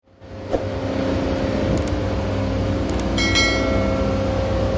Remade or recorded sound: recorded